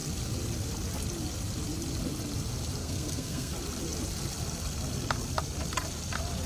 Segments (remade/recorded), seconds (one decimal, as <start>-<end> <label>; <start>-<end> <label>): 0.0-2.8 recorded; 2.8-3.5 remade; 3.5-6.5 recorded